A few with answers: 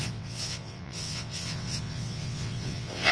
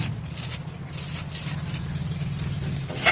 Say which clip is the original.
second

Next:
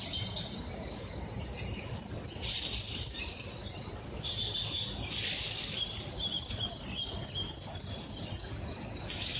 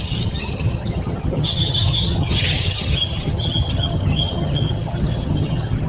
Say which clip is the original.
first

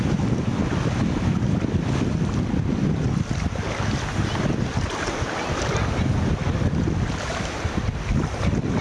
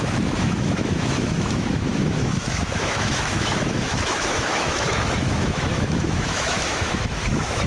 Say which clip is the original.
first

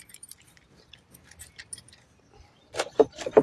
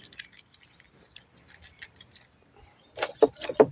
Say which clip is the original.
second